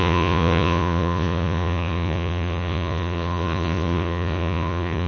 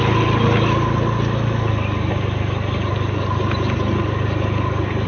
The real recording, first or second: second